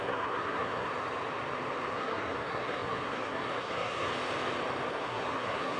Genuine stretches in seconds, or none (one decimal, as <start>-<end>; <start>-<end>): 0.9-1.9; 4.1-4.9